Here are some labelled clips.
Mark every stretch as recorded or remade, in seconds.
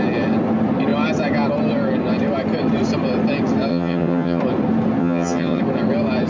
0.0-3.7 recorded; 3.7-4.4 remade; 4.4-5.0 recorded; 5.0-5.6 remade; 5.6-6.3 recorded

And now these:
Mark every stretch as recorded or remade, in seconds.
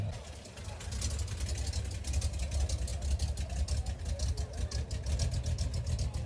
0.0-6.3 recorded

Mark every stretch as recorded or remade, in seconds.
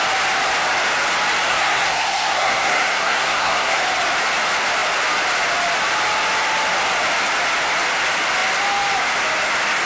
0.0-1.5 recorded; 1.5-3.8 remade; 3.8-9.9 recorded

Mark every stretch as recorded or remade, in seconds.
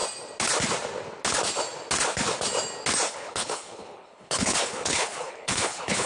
0.0-3.1 recorded; 3.1-6.1 remade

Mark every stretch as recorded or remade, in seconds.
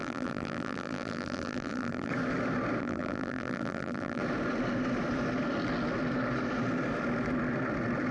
0.0-2.1 remade; 2.1-2.8 recorded; 2.8-4.2 remade; 4.2-8.1 recorded